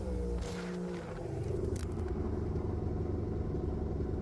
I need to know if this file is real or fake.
real